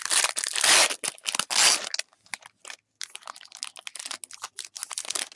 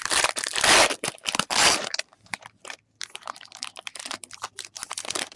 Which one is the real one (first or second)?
first